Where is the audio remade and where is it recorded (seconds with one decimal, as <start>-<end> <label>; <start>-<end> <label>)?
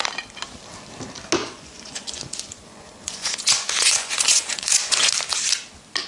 0.0-1.4 recorded; 1.4-5.1 remade; 5.1-6.1 recorded